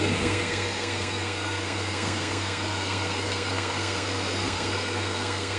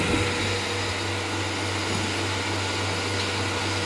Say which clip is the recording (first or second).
second